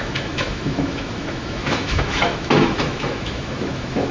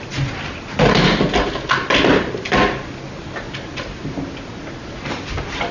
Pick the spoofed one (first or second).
first